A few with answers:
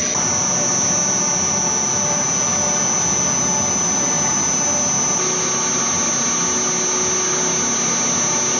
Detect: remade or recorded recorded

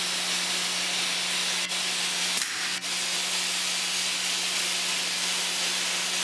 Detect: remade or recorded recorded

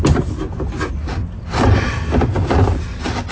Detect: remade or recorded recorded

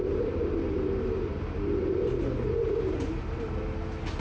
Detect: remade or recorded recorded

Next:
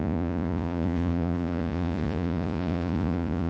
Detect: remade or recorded remade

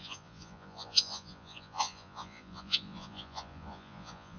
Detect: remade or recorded remade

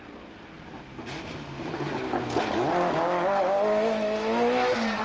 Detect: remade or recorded recorded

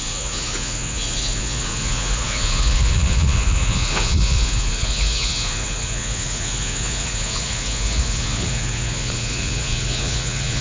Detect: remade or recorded remade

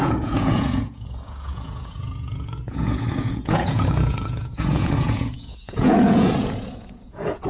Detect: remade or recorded remade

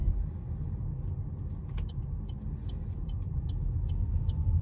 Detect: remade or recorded recorded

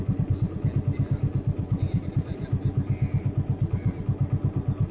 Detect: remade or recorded recorded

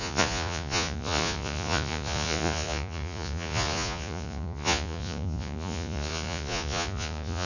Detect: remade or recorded remade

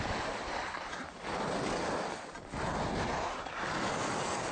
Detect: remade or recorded recorded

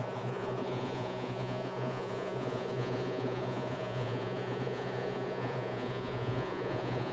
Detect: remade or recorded remade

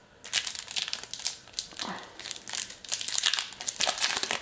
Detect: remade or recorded recorded